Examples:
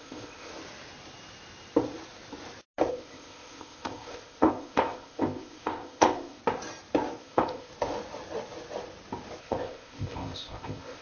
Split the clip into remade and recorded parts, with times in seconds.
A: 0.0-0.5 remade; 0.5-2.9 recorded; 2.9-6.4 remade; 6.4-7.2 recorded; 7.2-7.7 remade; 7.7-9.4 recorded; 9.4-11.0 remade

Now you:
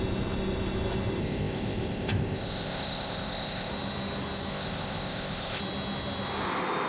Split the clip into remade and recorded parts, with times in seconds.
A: 0.0-1.2 recorded; 1.2-3.7 remade; 3.7-4.5 recorded; 4.5-5.6 remade; 5.6-6.9 recorded

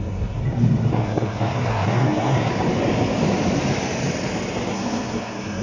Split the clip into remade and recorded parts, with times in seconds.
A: 0.0-0.4 remade; 0.4-0.9 recorded; 0.9-2.5 remade; 2.5-4.7 recorded; 4.7-5.6 remade

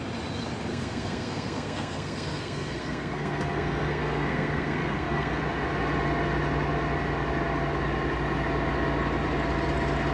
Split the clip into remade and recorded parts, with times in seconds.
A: 0.0-0.7 recorded; 0.7-5.4 remade; 5.4-10.1 recorded

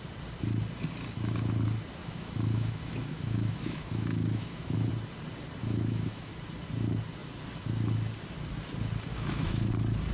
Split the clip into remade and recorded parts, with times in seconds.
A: 0.0-2.0 recorded; 2.0-4.9 remade; 4.9-5.6 recorded; 5.6-6.3 remade; 6.3-9.1 recorded; 9.1-9.7 remade; 9.7-10.1 recorded

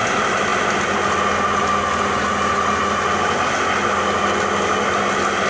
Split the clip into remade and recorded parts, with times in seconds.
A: 0.0-5.5 recorded

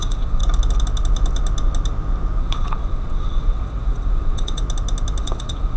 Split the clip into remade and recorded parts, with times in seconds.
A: 0.0-0.4 remade; 0.4-2.4 recorded; 2.4-4.6 remade; 4.6-5.2 recorded; 5.2-5.8 remade